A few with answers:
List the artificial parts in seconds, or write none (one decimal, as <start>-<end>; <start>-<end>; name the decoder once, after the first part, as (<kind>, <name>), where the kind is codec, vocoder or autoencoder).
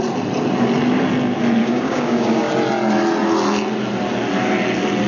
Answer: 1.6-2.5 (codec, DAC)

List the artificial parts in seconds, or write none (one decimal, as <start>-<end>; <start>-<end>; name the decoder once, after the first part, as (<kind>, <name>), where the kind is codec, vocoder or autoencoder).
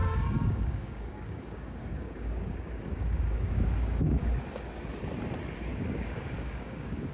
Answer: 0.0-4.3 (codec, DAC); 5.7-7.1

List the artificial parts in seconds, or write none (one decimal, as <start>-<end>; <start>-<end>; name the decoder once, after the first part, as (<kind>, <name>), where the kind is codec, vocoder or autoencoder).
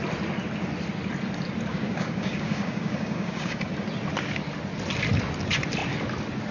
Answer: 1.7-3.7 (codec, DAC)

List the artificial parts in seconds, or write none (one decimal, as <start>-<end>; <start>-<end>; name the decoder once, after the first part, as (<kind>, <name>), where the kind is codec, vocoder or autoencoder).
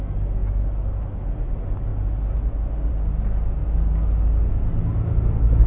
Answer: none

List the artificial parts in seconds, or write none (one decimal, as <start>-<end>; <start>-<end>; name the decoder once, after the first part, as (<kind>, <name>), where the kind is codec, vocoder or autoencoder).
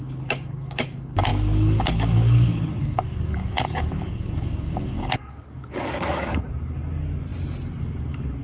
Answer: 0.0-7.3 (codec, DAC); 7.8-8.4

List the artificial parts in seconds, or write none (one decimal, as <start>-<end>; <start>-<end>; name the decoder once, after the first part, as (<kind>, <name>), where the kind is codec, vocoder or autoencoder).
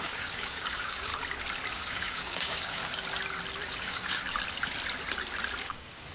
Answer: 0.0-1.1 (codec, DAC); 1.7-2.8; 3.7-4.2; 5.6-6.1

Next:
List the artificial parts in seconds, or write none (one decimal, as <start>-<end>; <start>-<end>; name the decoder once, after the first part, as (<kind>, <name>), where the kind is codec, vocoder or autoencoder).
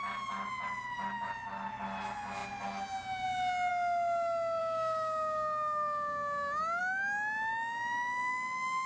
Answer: 4.6-6.8 (codec, DAC)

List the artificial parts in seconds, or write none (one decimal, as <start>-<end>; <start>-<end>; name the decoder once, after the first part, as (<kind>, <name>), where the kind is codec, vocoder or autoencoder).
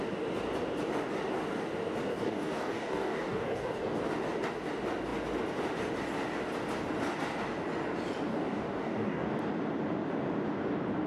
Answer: 2.1-4.0 (codec, DAC); 8.3-9.3